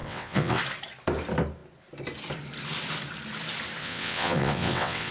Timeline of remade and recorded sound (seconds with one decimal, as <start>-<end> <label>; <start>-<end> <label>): 0.0-0.6 remade; 0.6-3.8 recorded; 3.8-5.1 remade